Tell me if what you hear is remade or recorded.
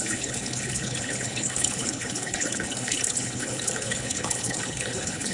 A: remade